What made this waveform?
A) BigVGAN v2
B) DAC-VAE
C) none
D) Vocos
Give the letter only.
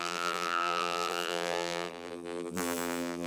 A